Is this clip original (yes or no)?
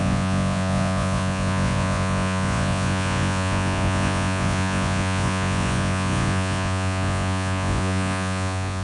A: no